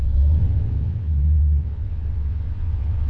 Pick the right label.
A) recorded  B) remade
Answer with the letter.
B